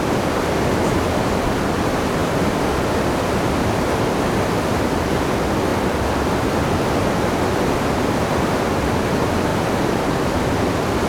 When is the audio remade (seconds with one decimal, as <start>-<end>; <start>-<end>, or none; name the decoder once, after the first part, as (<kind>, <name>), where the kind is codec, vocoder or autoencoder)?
9.5-10.4 (vocoder, BigVGAN v2)